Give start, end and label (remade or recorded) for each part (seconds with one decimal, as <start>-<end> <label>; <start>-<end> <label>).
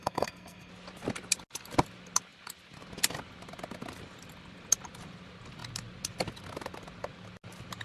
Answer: 0.0-0.7 remade; 0.7-7.8 recorded